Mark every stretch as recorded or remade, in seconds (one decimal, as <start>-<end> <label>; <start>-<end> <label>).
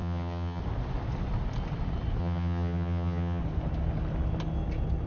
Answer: 0.0-0.6 remade; 0.6-2.2 recorded; 2.2-3.4 remade; 3.4-5.1 recorded